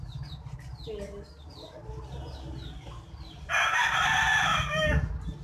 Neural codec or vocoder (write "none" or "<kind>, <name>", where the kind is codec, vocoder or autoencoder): none